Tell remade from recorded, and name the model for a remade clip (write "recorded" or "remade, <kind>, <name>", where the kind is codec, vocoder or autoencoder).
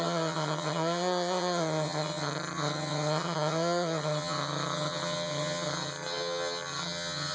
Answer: remade, vocoder, HiFi-GAN